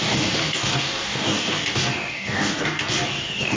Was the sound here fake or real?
fake